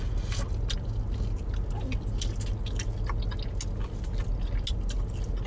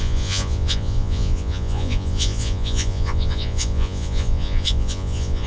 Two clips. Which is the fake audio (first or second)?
second